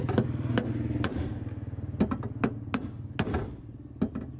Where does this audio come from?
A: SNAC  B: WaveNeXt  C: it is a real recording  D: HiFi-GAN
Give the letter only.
C